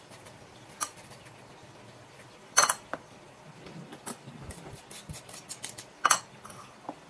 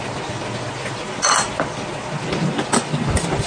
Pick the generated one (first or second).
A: first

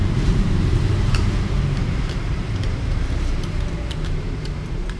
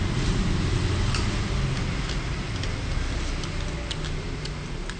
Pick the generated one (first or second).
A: first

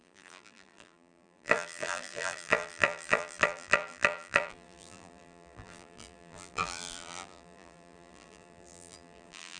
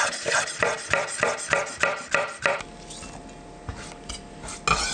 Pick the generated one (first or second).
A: first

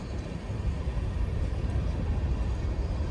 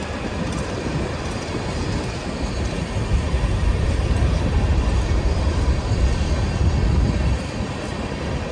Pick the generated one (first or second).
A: second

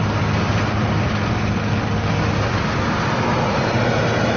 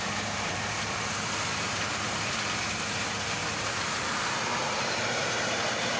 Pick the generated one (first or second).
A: second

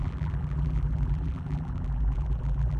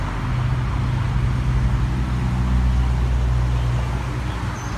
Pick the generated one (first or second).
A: first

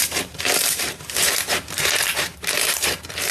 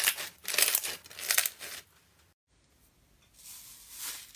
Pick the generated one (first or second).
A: first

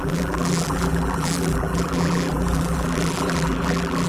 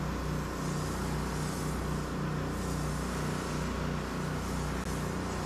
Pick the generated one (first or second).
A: first